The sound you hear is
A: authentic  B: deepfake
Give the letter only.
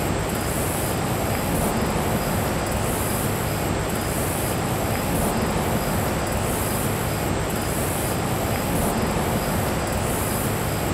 A